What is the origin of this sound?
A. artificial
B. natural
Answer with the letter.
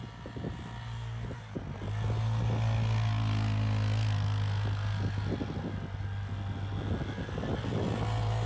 B